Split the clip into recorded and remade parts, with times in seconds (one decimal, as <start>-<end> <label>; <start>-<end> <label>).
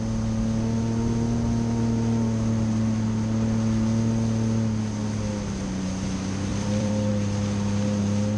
0.0-6.5 recorded; 6.5-7.1 remade; 7.1-8.4 recorded